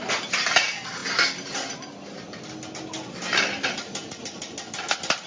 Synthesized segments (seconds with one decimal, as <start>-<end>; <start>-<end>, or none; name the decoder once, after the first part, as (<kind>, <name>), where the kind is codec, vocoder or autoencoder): none